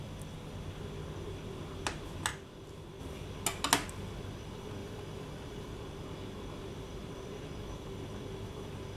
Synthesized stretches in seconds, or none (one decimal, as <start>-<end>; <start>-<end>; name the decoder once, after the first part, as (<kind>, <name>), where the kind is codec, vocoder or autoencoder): 4.8-5.8 (vocoder, BigVGAN v2)